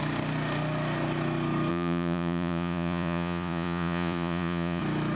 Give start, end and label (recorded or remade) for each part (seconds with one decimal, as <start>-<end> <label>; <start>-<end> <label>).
0.0-1.7 recorded; 1.7-4.8 remade; 4.8-5.2 recorded

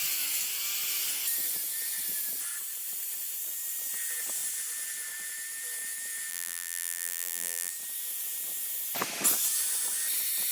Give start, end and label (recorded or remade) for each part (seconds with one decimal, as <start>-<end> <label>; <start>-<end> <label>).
0.0-6.3 recorded; 6.3-7.7 remade; 7.7-10.5 recorded